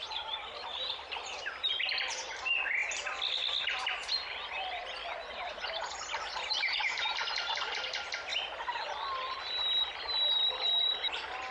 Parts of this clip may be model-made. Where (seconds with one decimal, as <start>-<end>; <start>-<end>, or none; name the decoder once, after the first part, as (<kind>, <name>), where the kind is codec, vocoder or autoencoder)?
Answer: 0.0-8.3 (vocoder, BigVGAN v2); 9.4-11.5